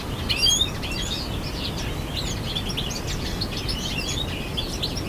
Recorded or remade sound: recorded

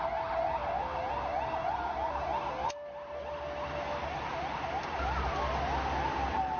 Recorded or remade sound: recorded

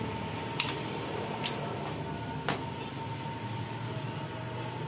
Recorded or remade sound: recorded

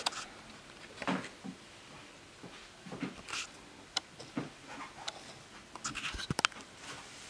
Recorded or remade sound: recorded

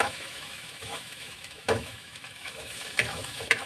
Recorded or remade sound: remade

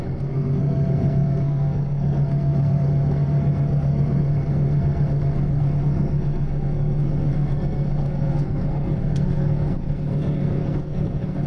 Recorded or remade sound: remade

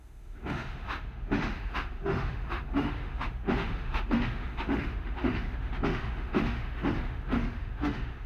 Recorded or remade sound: remade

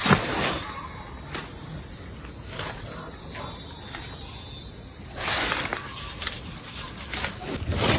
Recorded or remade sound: recorded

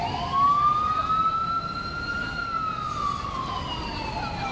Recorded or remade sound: recorded